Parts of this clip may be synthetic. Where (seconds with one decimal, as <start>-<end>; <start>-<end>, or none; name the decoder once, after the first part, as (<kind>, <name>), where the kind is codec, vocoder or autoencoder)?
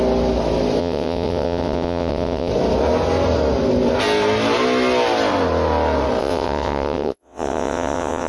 0.8-2.5 (vocoder, WaveNeXt); 6.2-8.3